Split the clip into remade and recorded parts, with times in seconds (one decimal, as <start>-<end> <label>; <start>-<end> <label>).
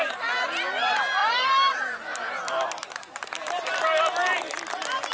0.0-1.2 recorded; 1.2-4.0 remade; 4.0-5.1 recorded